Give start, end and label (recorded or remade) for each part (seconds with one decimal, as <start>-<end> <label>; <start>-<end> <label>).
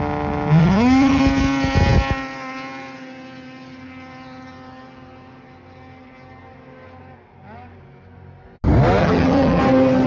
0.0-0.6 recorded; 0.6-1.2 remade; 1.2-9.0 recorded; 9.0-9.6 remade; 9.6-10.1 recorded